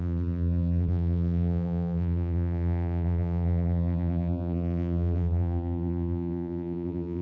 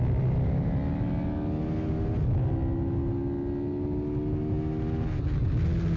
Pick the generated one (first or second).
first